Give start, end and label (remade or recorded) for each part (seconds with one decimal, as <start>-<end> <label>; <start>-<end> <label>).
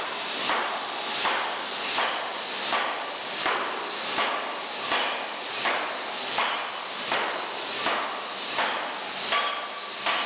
0.0-2.3 recorded; 2.3-3.9 remade; 3.9-10.3 recorded